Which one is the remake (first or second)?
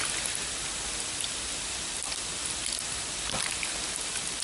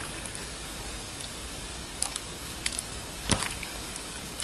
second